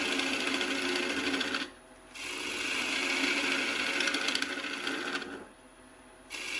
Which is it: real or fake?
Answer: real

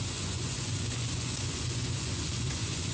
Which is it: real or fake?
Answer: fake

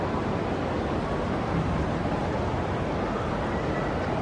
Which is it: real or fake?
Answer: real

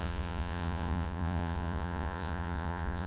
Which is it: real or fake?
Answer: fake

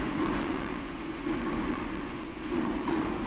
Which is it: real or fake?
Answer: fake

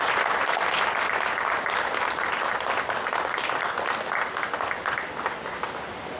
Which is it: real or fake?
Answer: real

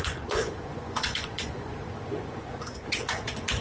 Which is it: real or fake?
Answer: fake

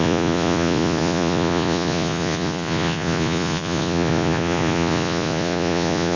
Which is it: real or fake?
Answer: fake